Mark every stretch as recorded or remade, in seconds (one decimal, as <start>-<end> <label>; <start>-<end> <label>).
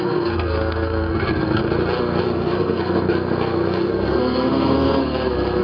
0.0-1.6 remade; 1.6-2.2 recorded; 2.2-5.6 remade